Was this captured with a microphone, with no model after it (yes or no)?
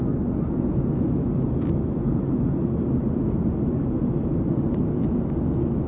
yes